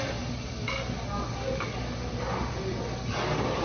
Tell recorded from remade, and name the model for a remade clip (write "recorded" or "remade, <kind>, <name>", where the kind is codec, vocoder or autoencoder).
recorded